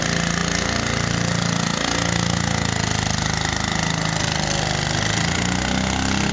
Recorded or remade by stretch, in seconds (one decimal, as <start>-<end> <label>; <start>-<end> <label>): 0.0-6.3 recorded